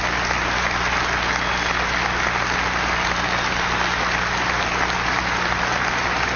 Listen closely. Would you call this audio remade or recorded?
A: recorded